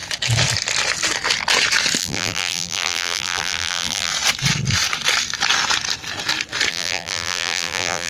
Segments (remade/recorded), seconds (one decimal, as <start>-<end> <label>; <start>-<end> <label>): 0.0-2.0 recorded; 2.0-4.1 remade; 4.1-6.7 recorded; 6.7-8.1 remade

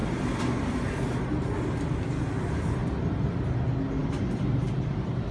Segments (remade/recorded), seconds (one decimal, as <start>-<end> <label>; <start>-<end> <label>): 0.0-2.8 recorded; 2.8-3.3 remade; 3.3-4.0 recorded; 4.0-5.3 remade